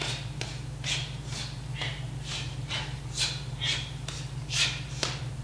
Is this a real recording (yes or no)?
no